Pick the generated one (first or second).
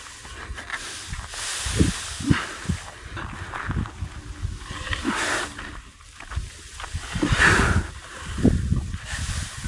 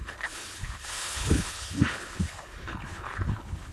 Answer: second